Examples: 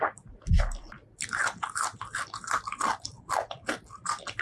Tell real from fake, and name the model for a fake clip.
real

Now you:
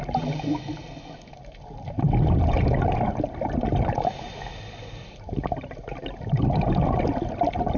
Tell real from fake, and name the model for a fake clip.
real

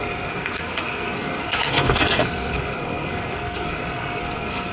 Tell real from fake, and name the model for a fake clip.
fake, codec, SNAC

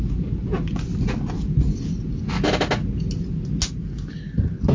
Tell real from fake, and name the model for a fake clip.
real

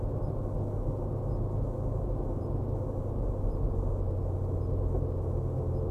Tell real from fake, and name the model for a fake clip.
real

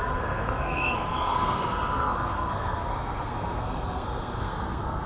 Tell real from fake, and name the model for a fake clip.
fake, codec, SNAC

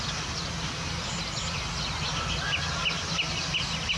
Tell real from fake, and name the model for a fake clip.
real